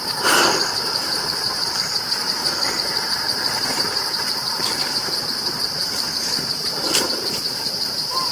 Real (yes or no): no